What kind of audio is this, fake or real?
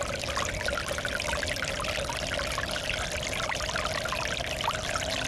real